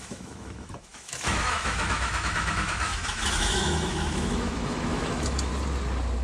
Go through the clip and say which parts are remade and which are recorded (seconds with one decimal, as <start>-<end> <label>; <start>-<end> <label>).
0.0-5.5 remade; 5.5-6.2 recorded